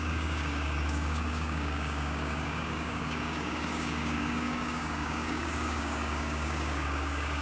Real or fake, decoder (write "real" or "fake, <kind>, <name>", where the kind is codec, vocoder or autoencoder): fake, codec, DAC